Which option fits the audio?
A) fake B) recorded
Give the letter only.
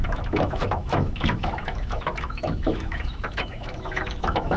A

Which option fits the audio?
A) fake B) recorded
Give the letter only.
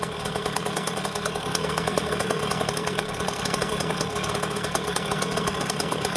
A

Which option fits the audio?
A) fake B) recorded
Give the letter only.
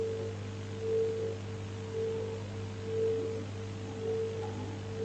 B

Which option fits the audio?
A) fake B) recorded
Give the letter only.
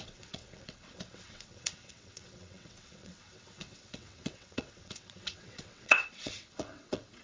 A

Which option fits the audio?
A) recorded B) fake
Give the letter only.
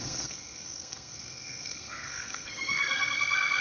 B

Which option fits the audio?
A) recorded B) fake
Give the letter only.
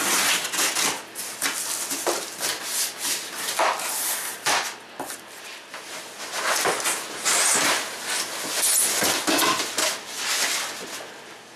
A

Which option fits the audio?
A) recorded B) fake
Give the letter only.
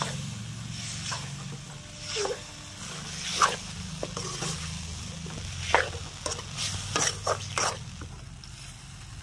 A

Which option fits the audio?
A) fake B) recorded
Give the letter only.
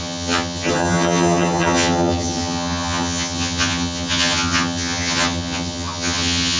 A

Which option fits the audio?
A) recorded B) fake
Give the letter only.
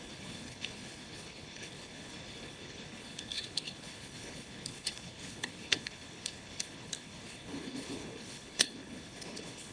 B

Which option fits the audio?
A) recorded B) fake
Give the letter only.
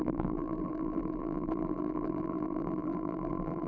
B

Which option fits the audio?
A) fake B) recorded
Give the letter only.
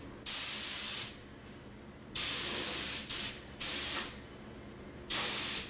B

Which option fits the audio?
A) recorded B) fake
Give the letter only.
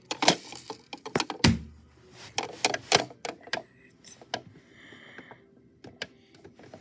A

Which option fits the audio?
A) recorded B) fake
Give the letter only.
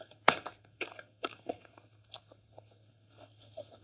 B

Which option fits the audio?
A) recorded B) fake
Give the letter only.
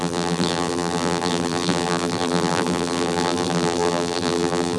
B